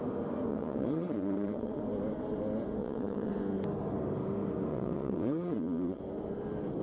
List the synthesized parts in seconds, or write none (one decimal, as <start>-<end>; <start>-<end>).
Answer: 0.5-1.8; 2.8-3.3; 4.7-6.0